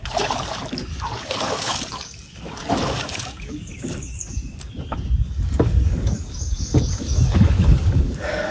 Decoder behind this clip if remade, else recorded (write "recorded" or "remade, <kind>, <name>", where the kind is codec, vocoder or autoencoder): remade, codec, DAC